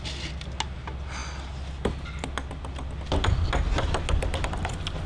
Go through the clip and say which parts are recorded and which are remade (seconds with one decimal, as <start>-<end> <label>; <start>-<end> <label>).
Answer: 0.0-5.1 recorded